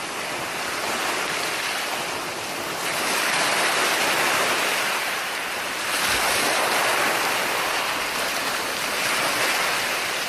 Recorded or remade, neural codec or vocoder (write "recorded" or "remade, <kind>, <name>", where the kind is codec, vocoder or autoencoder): recorded